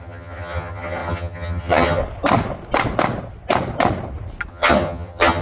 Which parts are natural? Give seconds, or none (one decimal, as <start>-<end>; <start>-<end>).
2.0-4.5